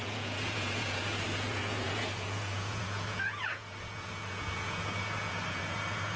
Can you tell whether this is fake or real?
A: fake